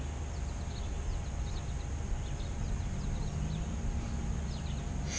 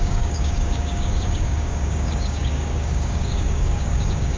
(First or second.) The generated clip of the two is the second